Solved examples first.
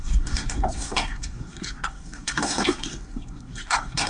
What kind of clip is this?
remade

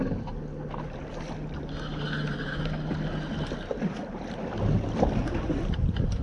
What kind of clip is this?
recorded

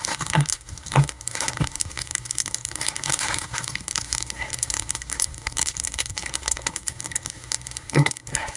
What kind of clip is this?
remade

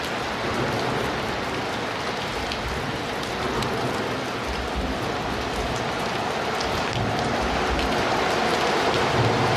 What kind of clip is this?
recorded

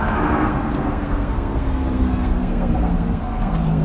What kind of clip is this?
remade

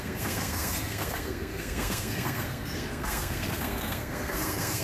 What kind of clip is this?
remade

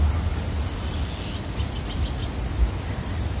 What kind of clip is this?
recorded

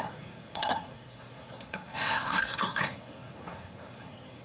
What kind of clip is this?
remade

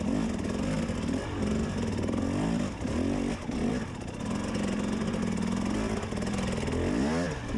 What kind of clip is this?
recorded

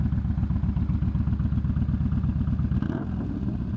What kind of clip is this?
recorded